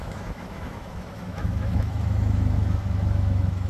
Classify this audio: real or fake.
fake